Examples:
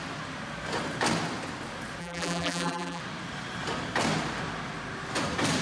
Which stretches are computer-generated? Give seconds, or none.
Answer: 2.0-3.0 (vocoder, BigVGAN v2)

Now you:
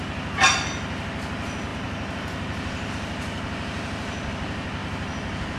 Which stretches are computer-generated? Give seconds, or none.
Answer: 1.7-2.9 (vocoder, BigVGAN v2)

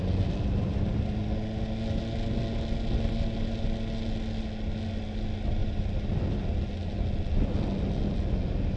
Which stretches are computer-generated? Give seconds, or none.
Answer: 5.6-6.2 (vocoder, BigVGAN v2)

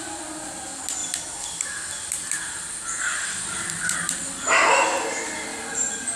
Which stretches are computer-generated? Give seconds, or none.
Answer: 1.0-4.6 (vocoder, BigVGAN v2); 5.5-6.2

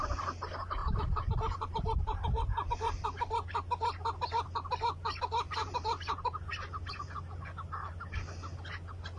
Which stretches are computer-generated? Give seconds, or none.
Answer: 0.8-2.7 (vocoder, BigVGAN v2); 5.6-6.5

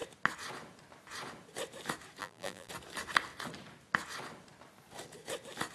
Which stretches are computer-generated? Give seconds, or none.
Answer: 2.2-2.7 (vocoder, BigVGAN v2)